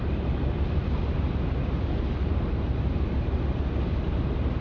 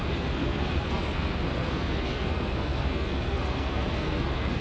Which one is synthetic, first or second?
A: second